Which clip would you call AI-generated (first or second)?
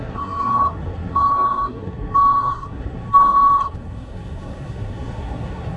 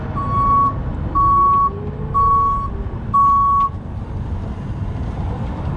first